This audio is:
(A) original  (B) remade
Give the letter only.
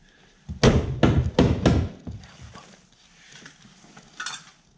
A